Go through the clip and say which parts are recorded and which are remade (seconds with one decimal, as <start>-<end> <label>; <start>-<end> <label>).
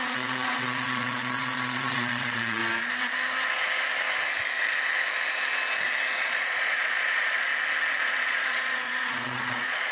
0.0-2.6 remade; 2.6-6.2 recorded; 6.2-7.5 remade; 7.5-8.0 recorded; 8.0-9.9 remade